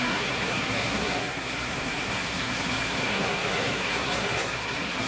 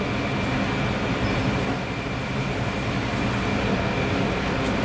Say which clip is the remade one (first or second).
first